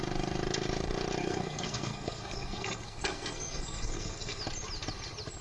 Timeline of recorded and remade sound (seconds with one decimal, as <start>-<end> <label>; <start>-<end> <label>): 0.0-1.2 recorded; 1.2-4.4 remade; 4.4-5.4 recorded